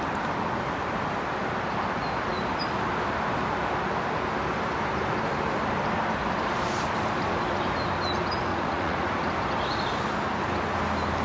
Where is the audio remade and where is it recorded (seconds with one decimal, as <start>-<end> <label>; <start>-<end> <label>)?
0.0-8.5 recorded; 8.5-9.3 remade; 9.3-11.2 recorded